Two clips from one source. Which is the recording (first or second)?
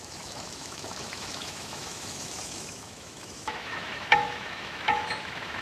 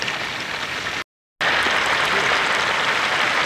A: second